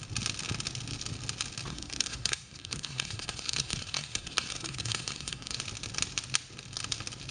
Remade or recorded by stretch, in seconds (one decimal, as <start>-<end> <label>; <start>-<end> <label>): 0.0-1.7 recorded; 1.7-5.6 remade; 5.6-7.3 recorded